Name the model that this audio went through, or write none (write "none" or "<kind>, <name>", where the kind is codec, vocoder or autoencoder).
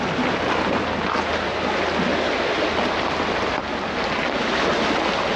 none